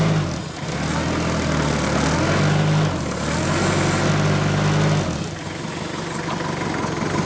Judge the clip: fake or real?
real